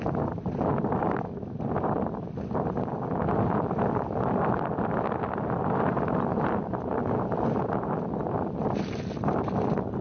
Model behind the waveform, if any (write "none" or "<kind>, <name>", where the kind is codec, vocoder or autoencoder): none